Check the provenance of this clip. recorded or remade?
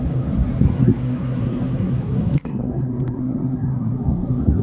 remade